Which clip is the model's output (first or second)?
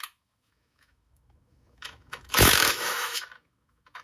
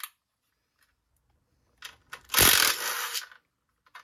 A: first